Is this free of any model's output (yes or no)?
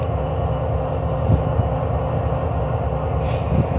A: yes